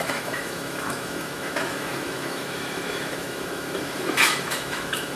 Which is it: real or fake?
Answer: fake